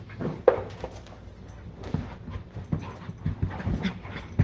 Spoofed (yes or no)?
no